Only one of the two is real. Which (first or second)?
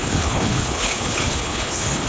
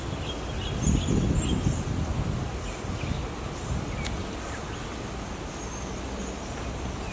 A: second